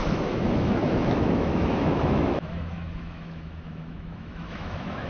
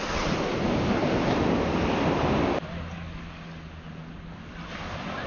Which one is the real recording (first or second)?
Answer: second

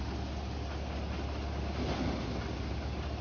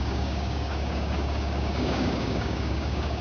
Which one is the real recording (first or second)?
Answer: first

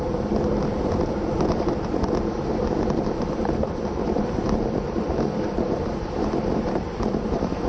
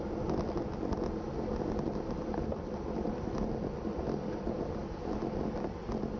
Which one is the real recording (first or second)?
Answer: second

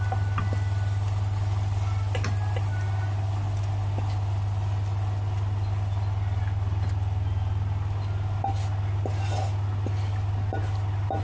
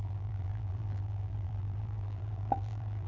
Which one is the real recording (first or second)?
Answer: first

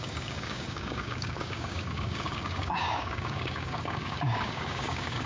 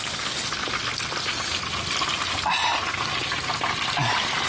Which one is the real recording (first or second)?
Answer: second